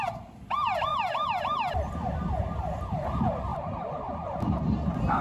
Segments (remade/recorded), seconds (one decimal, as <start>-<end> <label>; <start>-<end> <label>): 0.0-3.5 recorded; 3.5-4.1 remade; 4.1-5.2 recorded